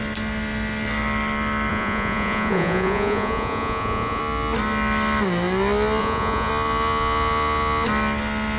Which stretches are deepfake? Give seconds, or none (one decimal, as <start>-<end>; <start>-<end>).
1.7-4.2; 6.0-6.5